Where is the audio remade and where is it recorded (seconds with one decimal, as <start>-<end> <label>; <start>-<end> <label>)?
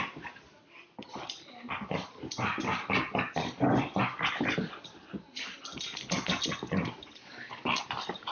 0.0-7.2 recorded; 7.2-7.8 remade; 7.8-8.3 recorded